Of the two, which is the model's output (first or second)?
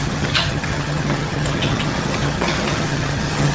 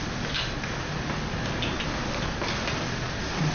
first